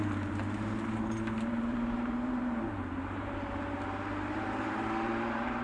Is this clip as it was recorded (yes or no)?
no